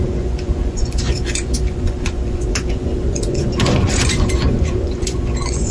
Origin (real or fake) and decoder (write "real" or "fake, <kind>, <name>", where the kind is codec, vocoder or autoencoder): fake, vocoder, Vocos